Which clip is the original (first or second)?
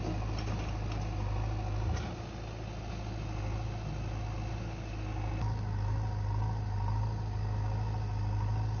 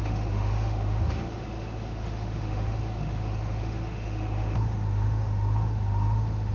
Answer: first